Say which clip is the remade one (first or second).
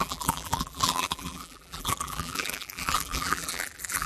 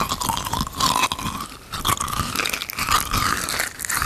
first